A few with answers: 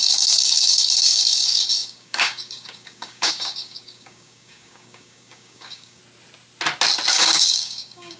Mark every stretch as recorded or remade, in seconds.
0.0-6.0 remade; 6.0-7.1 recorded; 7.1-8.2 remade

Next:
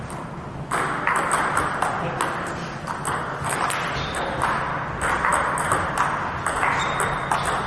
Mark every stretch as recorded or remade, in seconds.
0.0-7.7 recorded

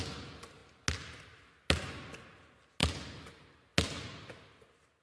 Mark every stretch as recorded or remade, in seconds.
0.0-5.0 recorded